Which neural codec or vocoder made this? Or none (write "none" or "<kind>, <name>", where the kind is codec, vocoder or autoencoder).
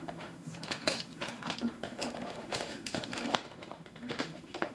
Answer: autoencoder, DAC-VAE